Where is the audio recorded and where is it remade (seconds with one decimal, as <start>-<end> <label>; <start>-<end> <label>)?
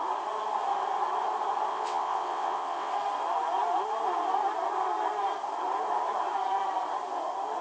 0.0-1.7 recorded; 1.7-2.9 remade; 2.9-7.6 recorded